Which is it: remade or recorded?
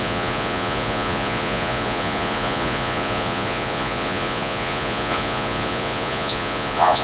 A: remade